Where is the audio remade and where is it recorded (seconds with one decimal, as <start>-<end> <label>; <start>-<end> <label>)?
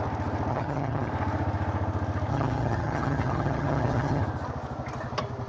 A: 0.0-0.5 recorded; 0.5-1.1 remade; 1.1-2.3 recorded; 2.3-4.2 remade; 4.2-5.5 recorded